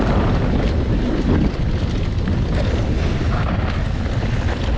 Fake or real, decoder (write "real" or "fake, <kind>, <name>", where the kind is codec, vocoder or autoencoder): real